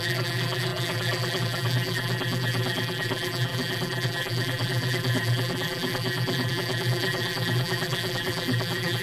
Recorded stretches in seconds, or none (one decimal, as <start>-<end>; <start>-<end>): none